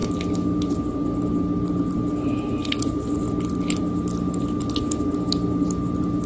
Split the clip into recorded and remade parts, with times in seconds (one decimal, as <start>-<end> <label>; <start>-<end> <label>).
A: 0.0-6.3 recorded

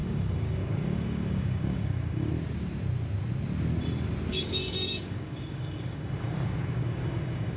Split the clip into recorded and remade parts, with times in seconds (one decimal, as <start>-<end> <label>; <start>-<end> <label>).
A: 0.0-2.3 remade; 2.3-4.3 recorded; 4.3-7.6 remade

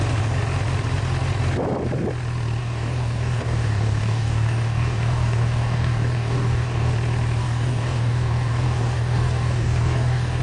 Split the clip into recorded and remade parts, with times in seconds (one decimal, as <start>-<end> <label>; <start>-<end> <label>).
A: 0.0-2.6 recorded; 2.6-6.9 remade; 6.9-7.4 recorded; 7.4-10.4 remade

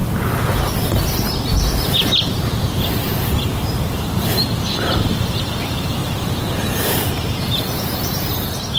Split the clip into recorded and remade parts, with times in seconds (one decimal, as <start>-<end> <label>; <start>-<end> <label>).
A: 0.0-3.5 recorded; 3.5-6.0 remade; 6.0-6.8 recorded; 6.8-8.8 remade

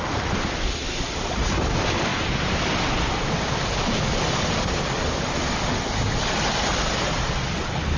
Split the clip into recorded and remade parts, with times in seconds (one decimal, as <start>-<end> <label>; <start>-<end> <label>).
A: 0.0-8.0 recorded

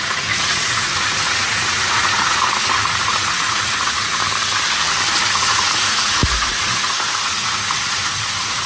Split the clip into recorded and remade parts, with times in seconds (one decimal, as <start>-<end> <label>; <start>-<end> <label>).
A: 0.0-4.1 remade; 4.1-5.1 recorded; 5.1-8.7 remade

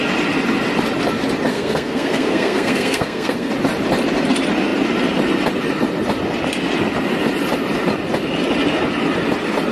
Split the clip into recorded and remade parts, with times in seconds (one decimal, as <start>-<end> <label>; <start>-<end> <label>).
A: 0.0-1.5 recorded; 1.5-3.5 remade; 3.5-9.7 recorded

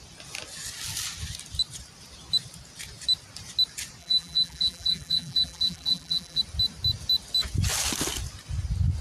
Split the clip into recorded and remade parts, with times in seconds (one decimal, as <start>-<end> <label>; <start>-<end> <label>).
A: 0.0-4.0 recorded; 4.0-6.4 remade; 6.4-9.0 recorded